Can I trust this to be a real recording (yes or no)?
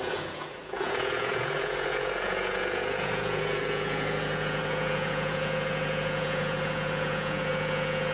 no